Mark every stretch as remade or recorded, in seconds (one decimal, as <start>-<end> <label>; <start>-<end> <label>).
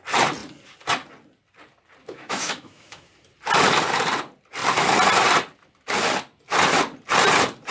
0.0-2.0 recorded; 2.0-3.1 remade; 3.1-7.7 recorded